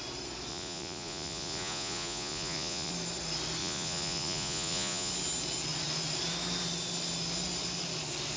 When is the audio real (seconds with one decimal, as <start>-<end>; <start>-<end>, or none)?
0.0-0.5; 2.9-3.6; 5.1-8.4